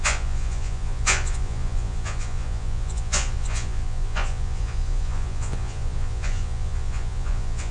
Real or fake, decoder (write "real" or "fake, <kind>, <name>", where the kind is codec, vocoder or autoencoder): fake, vocoder, Vocos